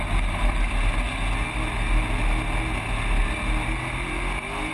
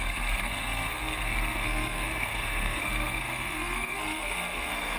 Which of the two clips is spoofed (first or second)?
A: second